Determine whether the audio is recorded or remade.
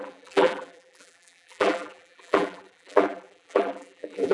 remade